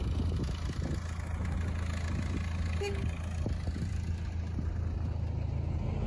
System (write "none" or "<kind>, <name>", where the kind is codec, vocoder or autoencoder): none